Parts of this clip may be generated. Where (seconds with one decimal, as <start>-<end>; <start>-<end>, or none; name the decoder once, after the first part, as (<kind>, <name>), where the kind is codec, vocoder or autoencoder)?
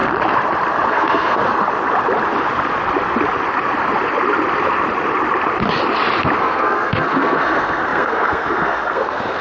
0.9-1.4 (codec, SNAC); 6.4-9.4